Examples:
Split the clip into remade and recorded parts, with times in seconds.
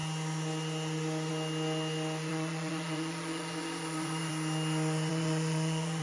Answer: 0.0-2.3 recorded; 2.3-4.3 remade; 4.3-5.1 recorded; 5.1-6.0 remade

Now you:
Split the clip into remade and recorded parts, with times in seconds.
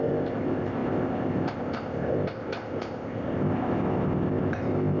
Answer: 0.0-5.0 remade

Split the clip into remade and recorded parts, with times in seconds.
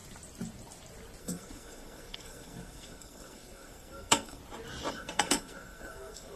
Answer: 0.0-1.2 recorded; 1.2-4.4 remade; 4.4-4.9 recorded; 4.9-6.4 remade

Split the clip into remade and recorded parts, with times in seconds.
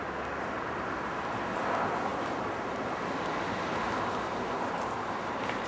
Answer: 0.0-5.7 recorded